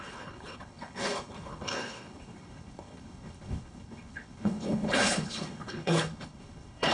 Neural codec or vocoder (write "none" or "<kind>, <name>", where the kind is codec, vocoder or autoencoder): codec, HILCodec